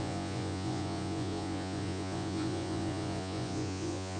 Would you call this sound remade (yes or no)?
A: yes